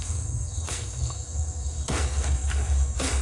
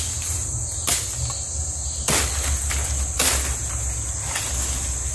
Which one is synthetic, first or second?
first